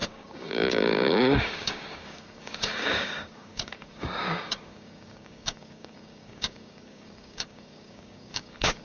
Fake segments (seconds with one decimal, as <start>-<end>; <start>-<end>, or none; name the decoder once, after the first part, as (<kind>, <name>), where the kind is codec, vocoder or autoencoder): 0.0-8.8 (codec, DAC)